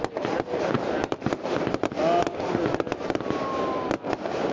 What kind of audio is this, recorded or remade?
recorded